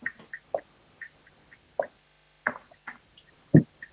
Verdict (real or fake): real